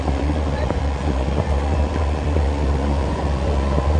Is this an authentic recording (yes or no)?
no